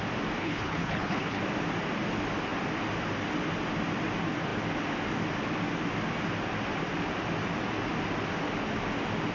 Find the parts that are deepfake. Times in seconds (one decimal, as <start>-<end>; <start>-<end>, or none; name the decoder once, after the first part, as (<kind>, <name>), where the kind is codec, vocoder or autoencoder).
0.4-1.4 (codec, HILCodec)

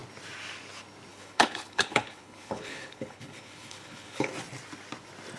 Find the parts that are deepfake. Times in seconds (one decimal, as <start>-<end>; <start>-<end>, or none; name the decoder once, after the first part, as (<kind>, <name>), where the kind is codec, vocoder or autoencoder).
1.1-4.3 (codec, HILCodec)